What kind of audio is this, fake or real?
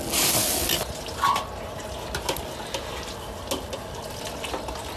real